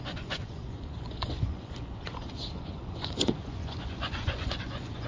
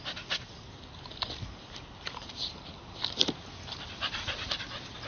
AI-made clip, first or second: first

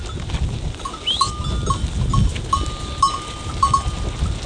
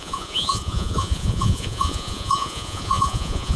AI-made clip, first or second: second